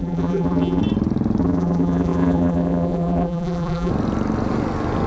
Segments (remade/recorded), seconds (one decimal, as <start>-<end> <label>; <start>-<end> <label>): 0.0-0.8 remade; 0.8-1.4 recorded; 1.4-3.9 remade; 3.9-5.1 recorded